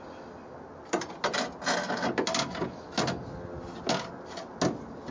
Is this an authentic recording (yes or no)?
yes